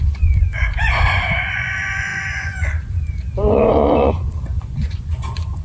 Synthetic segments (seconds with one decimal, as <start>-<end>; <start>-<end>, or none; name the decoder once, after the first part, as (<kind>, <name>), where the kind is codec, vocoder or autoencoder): 0.0-5.6 (vocoder, Vocos)